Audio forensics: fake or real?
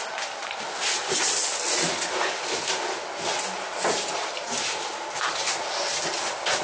real